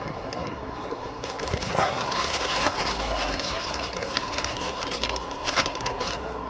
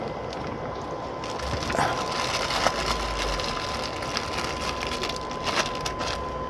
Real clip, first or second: second